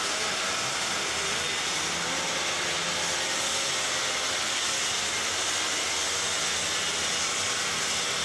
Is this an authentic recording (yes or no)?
yes